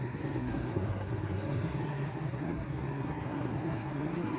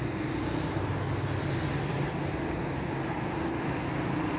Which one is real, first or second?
second